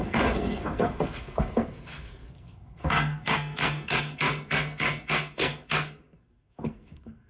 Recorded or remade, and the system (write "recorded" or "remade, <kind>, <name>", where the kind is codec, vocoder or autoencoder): remade, codec, SNAC